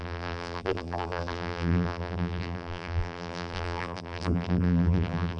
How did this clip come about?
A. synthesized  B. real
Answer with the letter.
A